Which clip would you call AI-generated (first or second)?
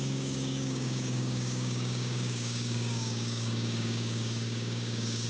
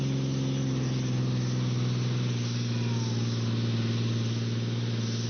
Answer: first